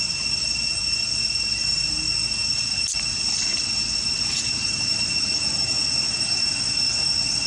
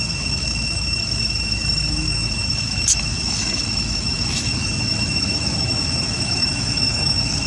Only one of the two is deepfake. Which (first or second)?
second